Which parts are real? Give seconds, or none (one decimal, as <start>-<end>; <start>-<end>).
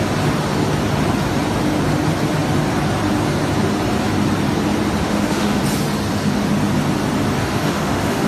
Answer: 0.0-5.0; 5.6-7.4